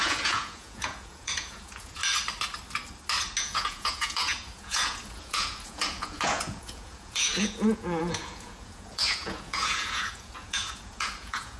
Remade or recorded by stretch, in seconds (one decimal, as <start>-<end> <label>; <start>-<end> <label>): 0.0-2.0 remade; 2.0-3.4 recorded; 3.4-11.6 remade